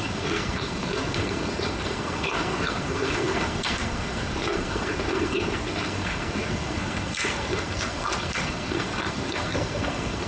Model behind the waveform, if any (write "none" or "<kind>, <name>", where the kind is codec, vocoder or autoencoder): codec, SNAC